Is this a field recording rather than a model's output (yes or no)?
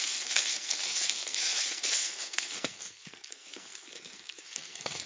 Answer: no